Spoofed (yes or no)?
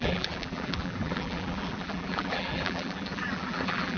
yes